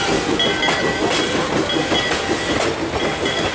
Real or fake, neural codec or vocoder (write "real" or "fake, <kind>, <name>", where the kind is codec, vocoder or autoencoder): real